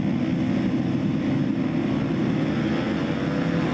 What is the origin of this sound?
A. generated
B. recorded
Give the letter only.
B